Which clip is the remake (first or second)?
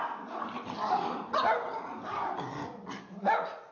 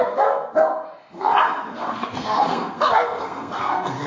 second